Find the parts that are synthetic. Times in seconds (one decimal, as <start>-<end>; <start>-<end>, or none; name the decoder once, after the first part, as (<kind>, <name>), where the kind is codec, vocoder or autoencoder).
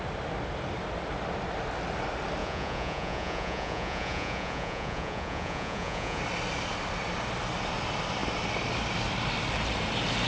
2.4-6.2 (vocoder, Vocos)